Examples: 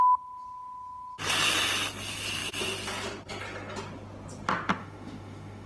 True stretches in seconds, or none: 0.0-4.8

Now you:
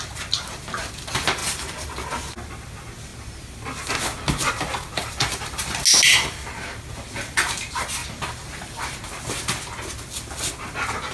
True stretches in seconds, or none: 0.0-1.4; 2.1-5.0; 5.8-8.0; 9.0-11.1

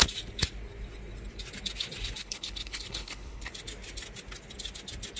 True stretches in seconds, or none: 0.0-2.2; 3.5-5.2